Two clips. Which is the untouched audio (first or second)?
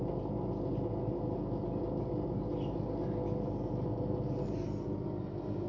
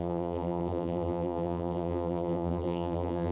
first